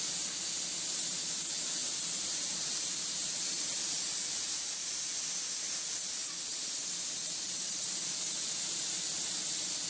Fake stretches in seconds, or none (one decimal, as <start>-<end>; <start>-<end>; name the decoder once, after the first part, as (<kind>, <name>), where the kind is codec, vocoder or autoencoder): 0.0-6.2 (vocoder, BigVGAN v2); 6.9-8.0; 8.6-9.9